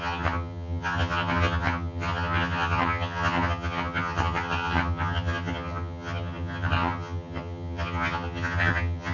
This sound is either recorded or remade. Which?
remade